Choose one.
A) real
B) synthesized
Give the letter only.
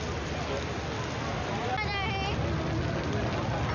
A